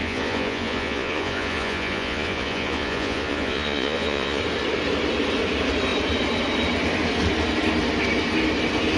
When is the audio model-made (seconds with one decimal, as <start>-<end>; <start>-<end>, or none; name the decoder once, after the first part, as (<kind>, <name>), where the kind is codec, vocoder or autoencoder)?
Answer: 0.0-4.4 (vocoder, Vocos)